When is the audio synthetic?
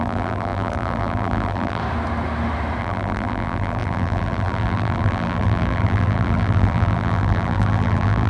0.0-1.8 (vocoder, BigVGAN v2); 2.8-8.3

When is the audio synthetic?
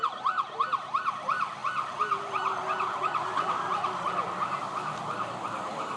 none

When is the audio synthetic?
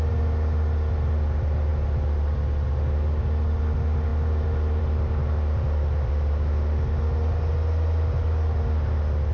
none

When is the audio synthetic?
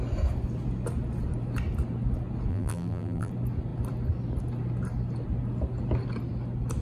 2.5-3.3 (vocoder, BigVGAN v2)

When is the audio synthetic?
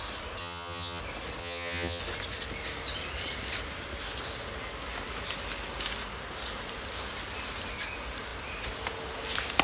0.4-1.0 (vocoder, HiFi-GAN); 1.4-2.0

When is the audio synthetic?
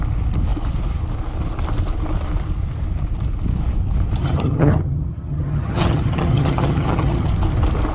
4.2-7.3 (vocoder, HiFi-GAN)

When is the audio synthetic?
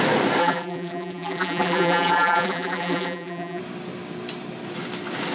0.4-3.6 (vocoder, BigVGAN v2)